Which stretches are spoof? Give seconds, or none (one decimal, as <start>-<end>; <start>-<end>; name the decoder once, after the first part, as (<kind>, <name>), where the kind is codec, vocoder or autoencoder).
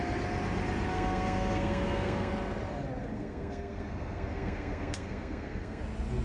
0.9-2.3 (codec, SNAC); 3.0-5.8